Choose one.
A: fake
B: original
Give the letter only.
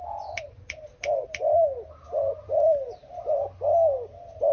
B